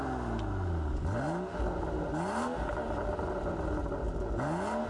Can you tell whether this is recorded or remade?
recorded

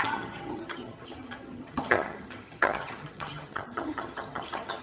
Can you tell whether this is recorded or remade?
remade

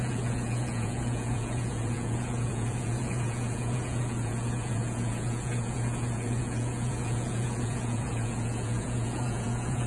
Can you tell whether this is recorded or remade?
remade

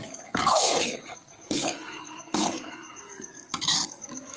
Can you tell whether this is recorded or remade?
remade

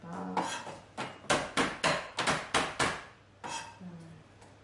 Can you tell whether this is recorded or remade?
recorded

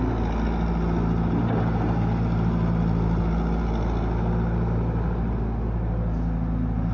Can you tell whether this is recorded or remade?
recorded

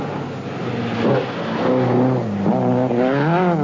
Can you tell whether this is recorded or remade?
recorded